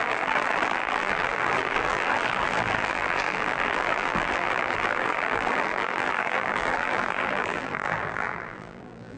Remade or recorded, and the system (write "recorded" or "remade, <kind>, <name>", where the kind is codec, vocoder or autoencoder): remade, vocoder, BigVGAN v2